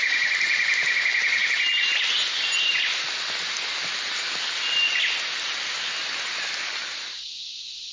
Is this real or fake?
real